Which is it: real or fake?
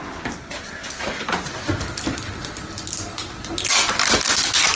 real